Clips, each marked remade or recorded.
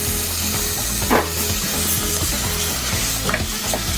recorded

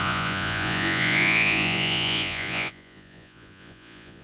remade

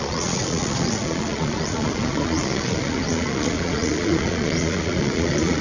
remade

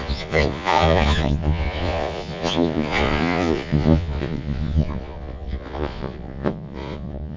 remade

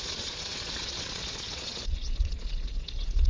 remade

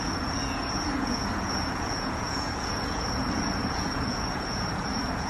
remade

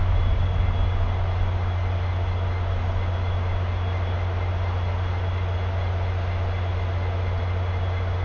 recorded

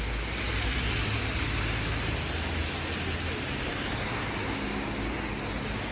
recorded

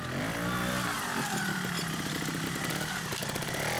recorded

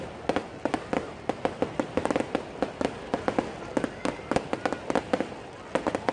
recorded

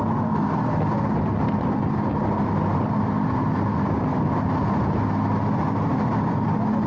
recorded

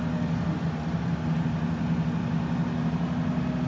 recorded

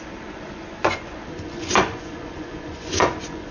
remade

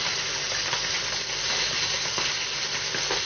recorded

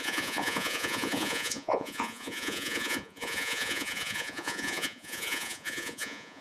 remade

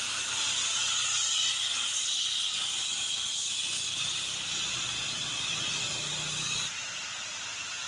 recorded